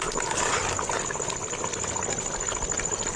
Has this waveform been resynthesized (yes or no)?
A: no